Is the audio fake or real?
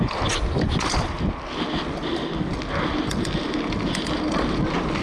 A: real